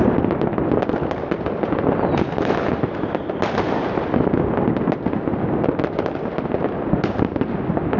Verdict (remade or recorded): recorded